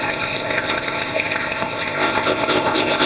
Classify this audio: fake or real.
fake